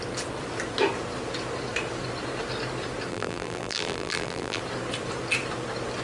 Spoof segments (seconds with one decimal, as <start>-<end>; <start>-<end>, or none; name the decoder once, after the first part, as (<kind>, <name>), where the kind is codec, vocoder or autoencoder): 3.1-4.6 (vocoder, BigVGAN v2)